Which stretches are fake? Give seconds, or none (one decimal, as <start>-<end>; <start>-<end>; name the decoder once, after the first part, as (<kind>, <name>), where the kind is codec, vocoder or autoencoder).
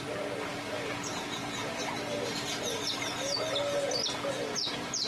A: 1.1-1.7 (vocoder, Vocos); 4.3-5.1